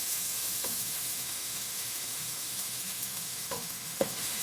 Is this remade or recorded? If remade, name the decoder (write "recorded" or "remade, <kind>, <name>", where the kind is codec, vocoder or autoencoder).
remade, autoencoder, DAC-VAE